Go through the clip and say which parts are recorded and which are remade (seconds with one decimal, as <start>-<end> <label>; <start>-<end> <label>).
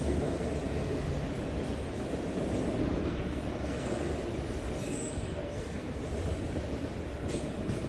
0.0-0.5 remade; 0.5-3.0 recorded; 3.0-4.2 remade; 4.2-4.8 recorded; 4.8-6.0 remade; 6.0-7.3 recorded; 7.3-7.9 remade